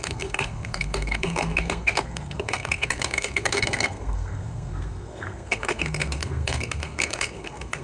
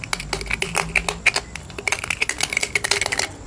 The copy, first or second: first